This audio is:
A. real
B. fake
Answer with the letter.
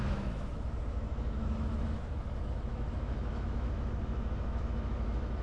B